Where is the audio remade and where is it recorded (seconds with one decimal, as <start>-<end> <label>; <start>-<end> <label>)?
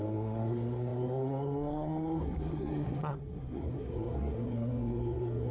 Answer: 0.0-5.5 remade